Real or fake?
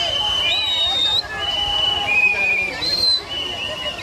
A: real